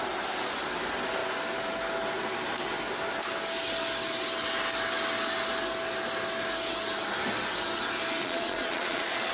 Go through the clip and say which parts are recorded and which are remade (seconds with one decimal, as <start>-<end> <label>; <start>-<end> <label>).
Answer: 0.0-8.2 recorded; 8.2-9.3 remade